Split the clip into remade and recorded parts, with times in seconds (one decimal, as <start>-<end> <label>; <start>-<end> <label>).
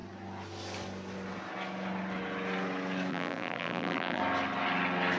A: 0.0-3.1 recorded; 3.1-4.2 remade; 4.2-5.2 recorded